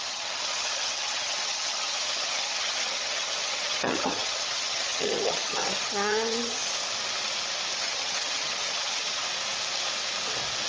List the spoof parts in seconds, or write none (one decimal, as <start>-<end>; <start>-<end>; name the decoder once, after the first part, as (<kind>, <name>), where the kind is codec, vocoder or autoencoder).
0.0-6.6 (vocoder, HiFi-GAN); 7.8-9.2